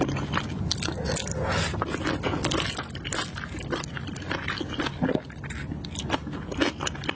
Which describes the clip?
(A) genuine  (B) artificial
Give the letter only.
A